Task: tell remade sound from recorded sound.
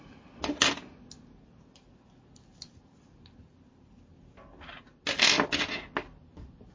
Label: recorded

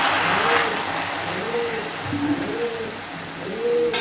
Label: recorded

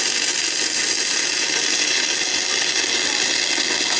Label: recorded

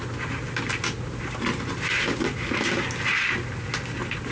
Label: recorded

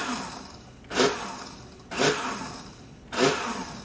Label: recorded